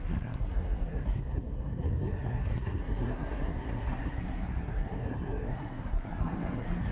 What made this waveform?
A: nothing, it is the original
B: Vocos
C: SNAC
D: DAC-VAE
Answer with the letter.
C